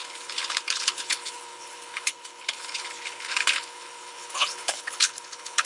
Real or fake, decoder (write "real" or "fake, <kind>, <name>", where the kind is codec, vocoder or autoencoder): fake, codec, HILCodec